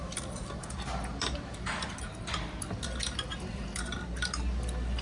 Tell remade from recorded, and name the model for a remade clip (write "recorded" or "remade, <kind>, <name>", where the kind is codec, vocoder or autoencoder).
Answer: recorded